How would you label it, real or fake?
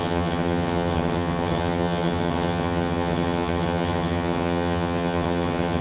fake